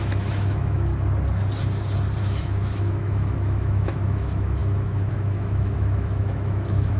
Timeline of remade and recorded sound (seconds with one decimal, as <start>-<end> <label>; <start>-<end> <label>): 0.0-0.9 remade; 0.9-2.2 recorded; 2.2-7.0 remade

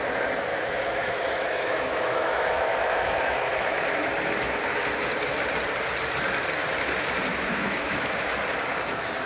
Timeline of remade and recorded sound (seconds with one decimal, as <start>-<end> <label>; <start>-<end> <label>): 0.0-0.5 recorded; 0.5-4.1 remade; 4.1-7.3 recorded; 7.3-8.3 remade; 8.3-9.3 recorded

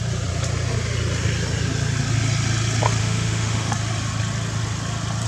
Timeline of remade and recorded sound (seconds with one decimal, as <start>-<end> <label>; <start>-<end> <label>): 0.0-3.0 recorded; 3.0-3.7 remade; 3.7-5.3 recorded